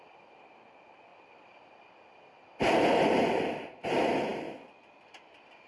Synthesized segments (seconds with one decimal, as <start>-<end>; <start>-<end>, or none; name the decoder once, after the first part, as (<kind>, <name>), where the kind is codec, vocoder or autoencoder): 1.1-3.2 (vocoder, BigVGAN v2)